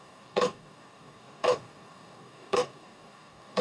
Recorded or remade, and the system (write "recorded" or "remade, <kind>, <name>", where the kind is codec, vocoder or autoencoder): remade, codec, DAC